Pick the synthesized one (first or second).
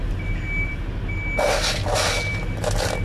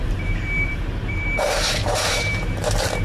second